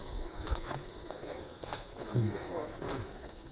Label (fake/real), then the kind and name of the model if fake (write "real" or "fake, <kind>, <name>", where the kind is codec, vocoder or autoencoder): fake, codec, SNAC